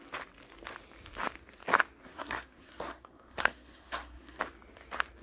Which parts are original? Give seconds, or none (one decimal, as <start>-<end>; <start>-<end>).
0.0-2.0; 4.4-5.2